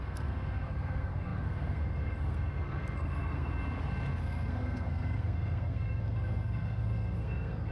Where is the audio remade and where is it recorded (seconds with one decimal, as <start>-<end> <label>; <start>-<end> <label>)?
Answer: 0.0-3.5 remade; 3.5-4.2 recorded; 4.2-7.7 remade